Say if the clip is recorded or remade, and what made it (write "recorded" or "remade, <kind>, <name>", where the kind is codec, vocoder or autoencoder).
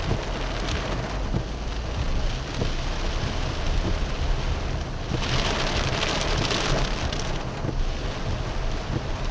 recorded